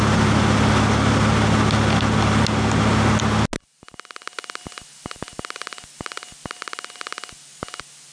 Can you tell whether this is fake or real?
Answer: real